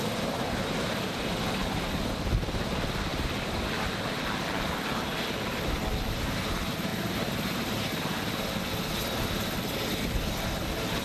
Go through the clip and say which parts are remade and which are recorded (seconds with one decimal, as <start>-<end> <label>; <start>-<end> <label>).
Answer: 0.0-1.6 recorded; 1.6-2.1 remade; 2.1-6.9 recorded; 6.9-7.9 remade; 7.9-11.0 recorded